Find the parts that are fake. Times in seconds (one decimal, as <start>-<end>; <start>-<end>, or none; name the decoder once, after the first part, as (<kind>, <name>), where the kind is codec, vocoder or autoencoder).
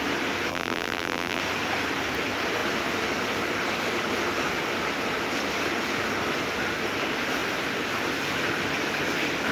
0.5-1.4 (vocoder, BigVGAN v2)